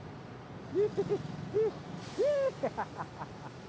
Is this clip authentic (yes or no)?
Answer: yes